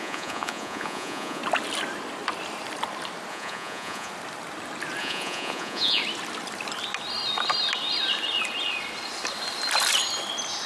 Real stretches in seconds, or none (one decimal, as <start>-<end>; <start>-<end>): 1.4-3.3; 4.1-5.0; 6.0-10.7

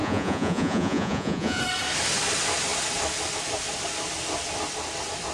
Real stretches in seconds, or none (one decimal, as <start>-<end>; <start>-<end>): 1.6-5.3

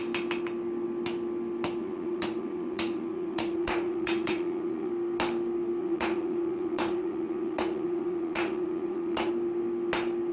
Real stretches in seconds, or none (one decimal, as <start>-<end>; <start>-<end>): 0.0-1.8; 4.9-5.8; 9.3-10.3

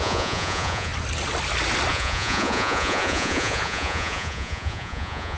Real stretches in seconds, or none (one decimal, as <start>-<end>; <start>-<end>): 0.9-1.9

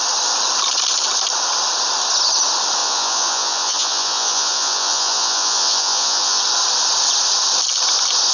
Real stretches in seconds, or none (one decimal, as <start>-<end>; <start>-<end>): 0.0-2.8; 6.4-8.3

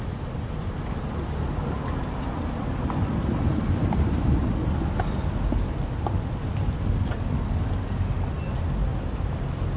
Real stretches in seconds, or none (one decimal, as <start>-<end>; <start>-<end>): 0.0-9.8

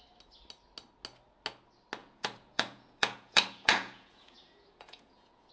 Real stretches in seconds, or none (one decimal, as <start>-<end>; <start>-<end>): 0.0-2.0